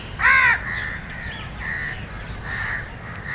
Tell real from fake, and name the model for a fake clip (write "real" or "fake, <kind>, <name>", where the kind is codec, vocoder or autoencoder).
real